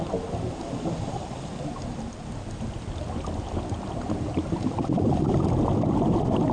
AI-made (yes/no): no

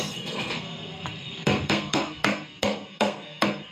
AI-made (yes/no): yes